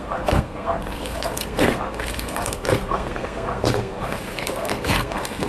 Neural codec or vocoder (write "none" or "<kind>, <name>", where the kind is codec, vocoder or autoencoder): codec, SNAC